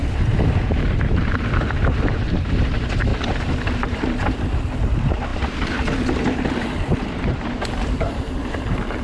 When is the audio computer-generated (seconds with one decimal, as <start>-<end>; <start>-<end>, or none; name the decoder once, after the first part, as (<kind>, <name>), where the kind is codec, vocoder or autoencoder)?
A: 0.0-3.1 (vocoder, BigVGAN v2); 3.7-9.0